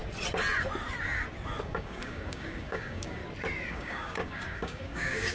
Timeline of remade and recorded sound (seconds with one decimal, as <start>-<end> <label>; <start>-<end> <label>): 0.0-1.6 recorded; 1.6-3.2 remade; 3.2-3.7 recorded; 3.7-5.3 remade